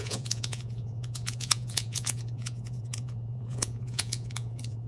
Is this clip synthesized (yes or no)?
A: yes